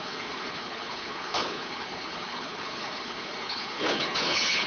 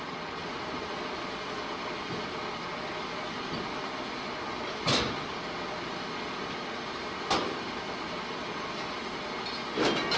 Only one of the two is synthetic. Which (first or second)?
first